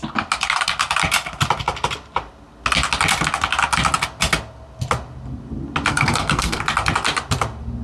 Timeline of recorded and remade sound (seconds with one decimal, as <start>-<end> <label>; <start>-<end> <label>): 0.0-5.9 recorded; 5.9-6.6 remade; 6.6-7.8 recorded